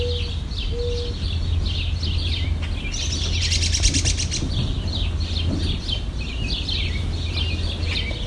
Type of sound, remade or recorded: recorded